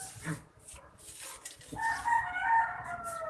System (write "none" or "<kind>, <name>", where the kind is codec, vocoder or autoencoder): none